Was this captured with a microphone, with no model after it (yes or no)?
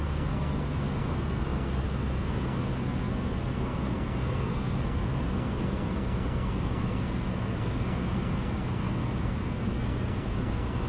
no